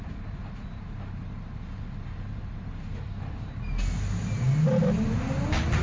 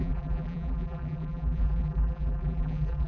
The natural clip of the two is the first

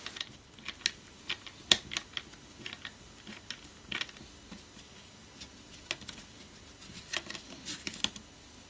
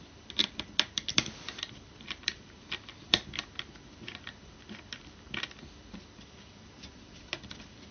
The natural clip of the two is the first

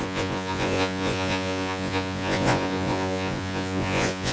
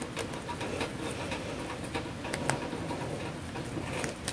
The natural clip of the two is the second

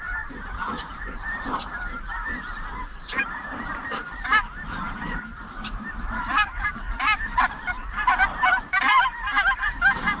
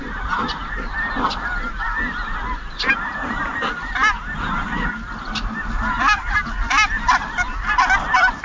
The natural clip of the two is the second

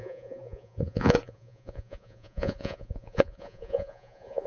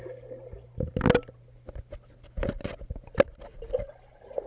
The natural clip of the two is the second